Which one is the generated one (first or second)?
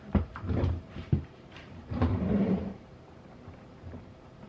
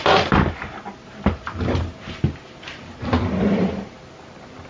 first